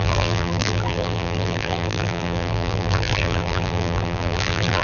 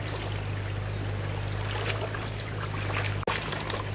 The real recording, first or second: second